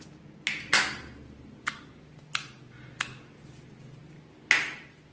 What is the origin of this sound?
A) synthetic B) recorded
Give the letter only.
B